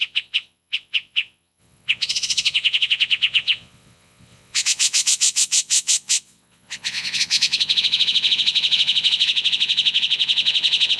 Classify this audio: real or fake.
fake